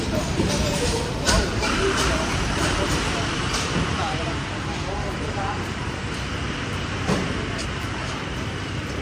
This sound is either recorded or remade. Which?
remade